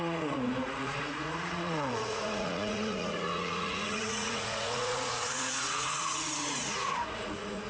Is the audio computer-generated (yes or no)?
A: yes